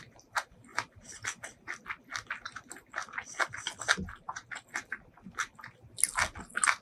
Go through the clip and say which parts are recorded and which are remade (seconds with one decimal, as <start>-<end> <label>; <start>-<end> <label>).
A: 0.0-6.8 recorded